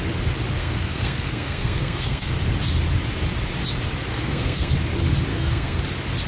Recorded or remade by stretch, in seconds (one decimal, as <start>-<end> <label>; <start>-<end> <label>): 0.0-0.6 recorded; 0.6-2.3 remade; 2.3-4.1 recorded; 4.1-4.7 remade; 4.7-5.3 recorded; 5.3-5.8 remade; 5.8-6.3 recorded